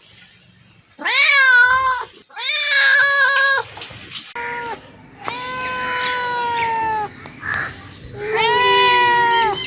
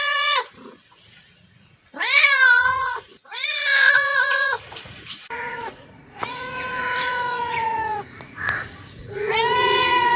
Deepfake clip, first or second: second